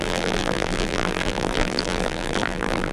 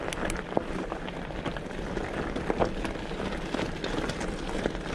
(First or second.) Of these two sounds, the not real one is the first